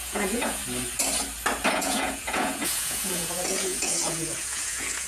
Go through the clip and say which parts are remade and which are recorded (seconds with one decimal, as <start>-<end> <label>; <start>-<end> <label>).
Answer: 0.0-0.6 remade; 0.6-1.7 recorded; 1.7-5.1 remade